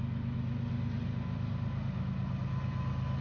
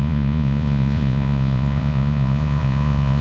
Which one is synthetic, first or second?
second